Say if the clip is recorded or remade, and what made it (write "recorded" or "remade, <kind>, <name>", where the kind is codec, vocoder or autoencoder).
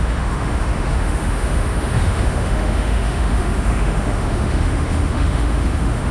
remade, autoencoder, DAC-VAE